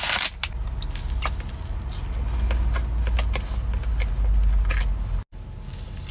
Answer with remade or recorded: recorded